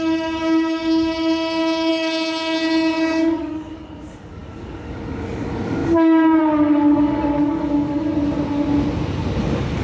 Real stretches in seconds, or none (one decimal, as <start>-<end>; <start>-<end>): 8.1-9.4